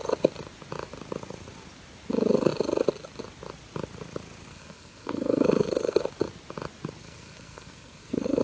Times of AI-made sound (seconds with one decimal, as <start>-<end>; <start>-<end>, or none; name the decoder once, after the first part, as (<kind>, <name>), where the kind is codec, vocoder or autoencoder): 4.5-6.0 (codec, SNAC); 7.0-8.4